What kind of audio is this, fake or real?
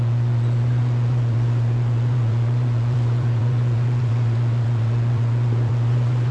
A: fake